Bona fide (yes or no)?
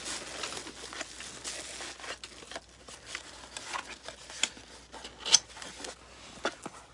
yes